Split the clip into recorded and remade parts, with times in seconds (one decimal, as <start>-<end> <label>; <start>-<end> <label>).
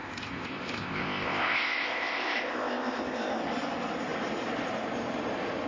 0.0-3.4 remade; 3.4-5.7 recorded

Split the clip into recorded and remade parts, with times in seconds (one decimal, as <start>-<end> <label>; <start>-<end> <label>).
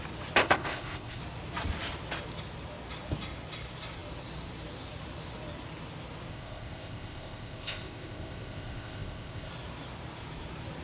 0.0-0.4 recorded; 0.4-1.2 remade; 1.2-6.3 recorded; 6.3-9.5 remade; 9.5-10.8 recorded